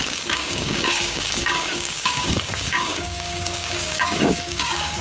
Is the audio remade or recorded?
remade